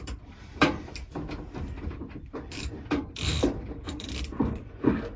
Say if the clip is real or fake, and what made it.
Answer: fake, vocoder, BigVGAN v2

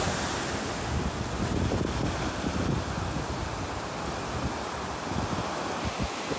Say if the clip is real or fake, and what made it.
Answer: real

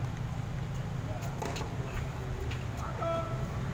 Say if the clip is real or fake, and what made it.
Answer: real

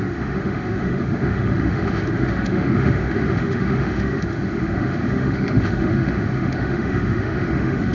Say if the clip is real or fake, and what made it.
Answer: fake, autoencoder, DAC-VAE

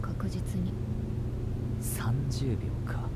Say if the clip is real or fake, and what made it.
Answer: real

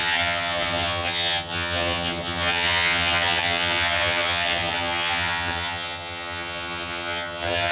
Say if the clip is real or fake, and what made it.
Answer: fake, vocoder, HiFi-GAN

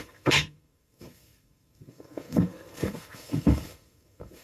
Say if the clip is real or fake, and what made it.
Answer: fake, codec, SNAC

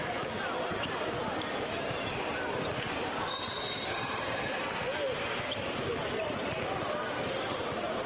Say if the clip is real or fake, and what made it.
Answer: fake, vocoder, BigVGAN v2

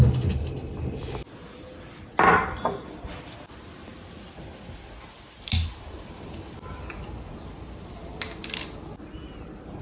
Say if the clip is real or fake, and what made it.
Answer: real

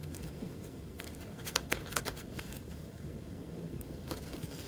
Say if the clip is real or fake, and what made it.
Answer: fake, codec, SNAC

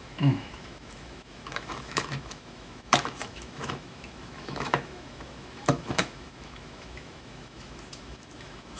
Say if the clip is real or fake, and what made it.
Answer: fake, autoencoder, DAC-VAE